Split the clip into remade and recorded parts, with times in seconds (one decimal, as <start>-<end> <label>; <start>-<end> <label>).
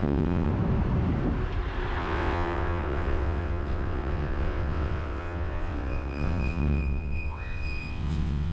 0.0-0.5 remade; 0.5-2.0 recorded; 2.0-8.5 remade